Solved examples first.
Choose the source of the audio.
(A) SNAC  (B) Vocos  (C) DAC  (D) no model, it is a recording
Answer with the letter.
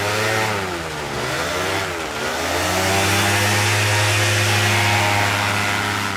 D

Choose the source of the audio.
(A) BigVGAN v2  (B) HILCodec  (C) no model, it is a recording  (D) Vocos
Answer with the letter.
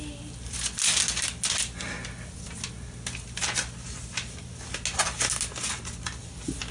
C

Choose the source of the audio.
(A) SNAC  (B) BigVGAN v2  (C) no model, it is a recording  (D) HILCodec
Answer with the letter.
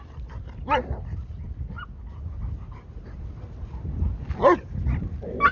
C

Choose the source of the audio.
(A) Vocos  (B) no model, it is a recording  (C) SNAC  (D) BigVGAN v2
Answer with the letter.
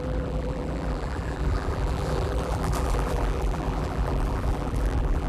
D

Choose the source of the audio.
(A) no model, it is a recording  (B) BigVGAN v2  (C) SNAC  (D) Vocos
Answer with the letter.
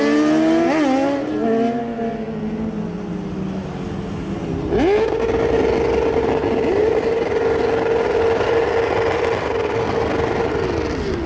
A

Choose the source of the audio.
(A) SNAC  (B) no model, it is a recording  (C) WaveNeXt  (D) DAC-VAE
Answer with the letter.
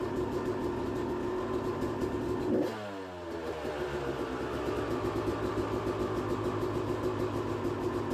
B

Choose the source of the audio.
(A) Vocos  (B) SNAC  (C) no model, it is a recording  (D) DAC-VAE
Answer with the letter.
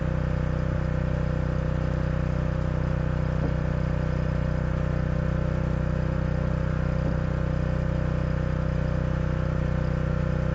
C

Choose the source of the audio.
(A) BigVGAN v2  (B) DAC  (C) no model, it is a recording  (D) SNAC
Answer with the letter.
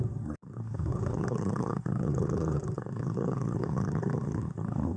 D